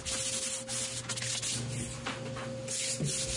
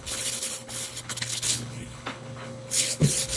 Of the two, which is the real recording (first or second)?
first